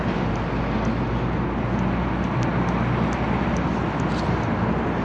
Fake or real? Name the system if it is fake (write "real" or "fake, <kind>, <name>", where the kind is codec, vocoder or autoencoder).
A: real